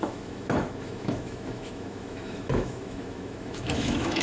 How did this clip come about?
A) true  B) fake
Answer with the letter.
B